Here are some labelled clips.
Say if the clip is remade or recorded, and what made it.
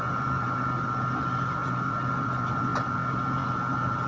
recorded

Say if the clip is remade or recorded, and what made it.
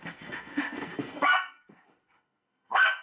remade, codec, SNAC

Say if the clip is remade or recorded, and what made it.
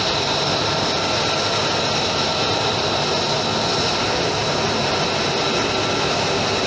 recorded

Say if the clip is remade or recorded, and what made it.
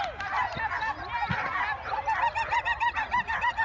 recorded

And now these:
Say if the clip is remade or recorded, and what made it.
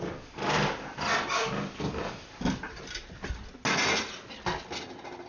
recorded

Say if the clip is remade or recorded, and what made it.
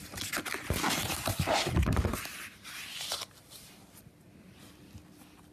recorded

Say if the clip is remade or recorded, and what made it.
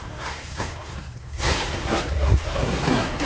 remade, codec, SNAC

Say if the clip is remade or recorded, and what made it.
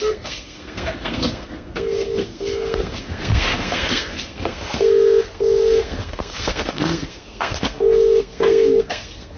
remade, codec, SNAC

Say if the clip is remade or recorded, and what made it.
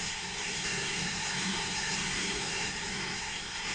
remade, codec, SNAC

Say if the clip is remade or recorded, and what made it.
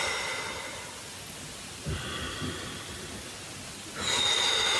recorded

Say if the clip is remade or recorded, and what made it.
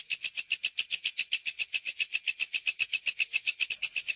recorded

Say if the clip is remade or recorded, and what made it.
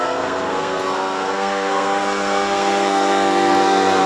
remade, codec, SNAC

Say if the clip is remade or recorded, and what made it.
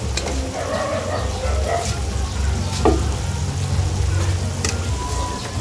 recorded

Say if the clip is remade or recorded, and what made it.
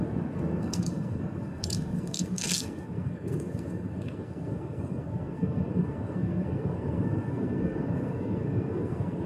remade, codec, SNAC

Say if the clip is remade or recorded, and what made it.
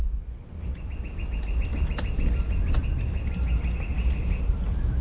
recorded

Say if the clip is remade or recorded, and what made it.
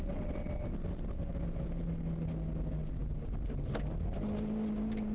recorded